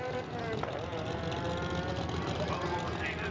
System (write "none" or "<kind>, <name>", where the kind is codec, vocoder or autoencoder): none